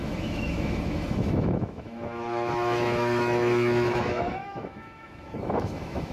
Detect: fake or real fake